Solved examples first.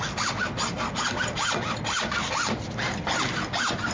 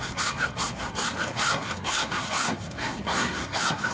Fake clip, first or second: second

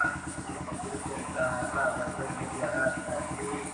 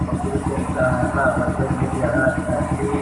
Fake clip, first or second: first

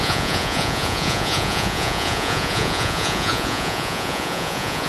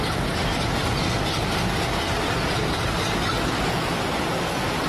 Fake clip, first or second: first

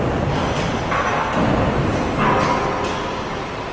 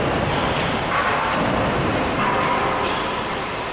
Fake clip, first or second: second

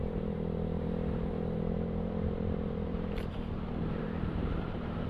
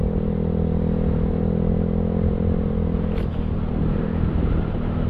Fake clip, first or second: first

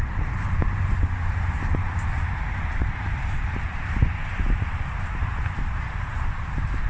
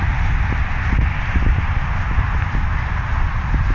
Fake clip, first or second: first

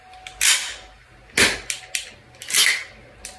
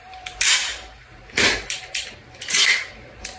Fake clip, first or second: second